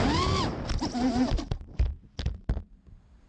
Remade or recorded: recorded